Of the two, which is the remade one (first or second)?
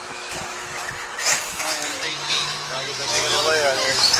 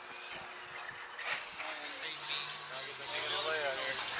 first